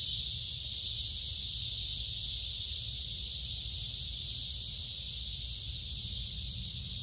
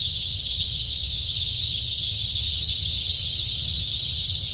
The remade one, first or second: second